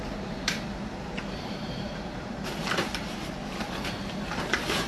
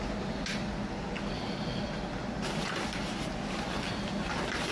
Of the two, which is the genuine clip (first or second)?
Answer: second